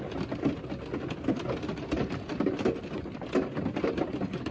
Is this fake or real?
real